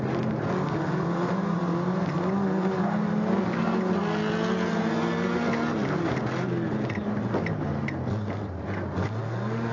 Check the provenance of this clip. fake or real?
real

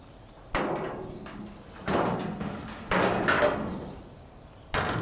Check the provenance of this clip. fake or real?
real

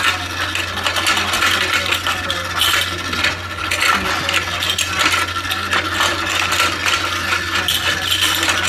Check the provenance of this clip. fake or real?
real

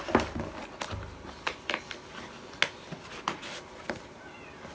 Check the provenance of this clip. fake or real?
real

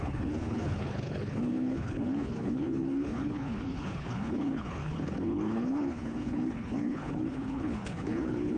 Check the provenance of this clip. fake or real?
fake